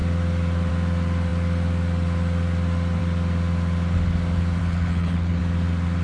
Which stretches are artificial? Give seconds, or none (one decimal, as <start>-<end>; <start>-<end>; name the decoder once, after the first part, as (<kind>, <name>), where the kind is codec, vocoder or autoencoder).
4.6-5.4 (codec, HILCodec)